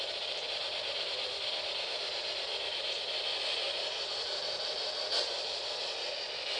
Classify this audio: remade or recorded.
recorded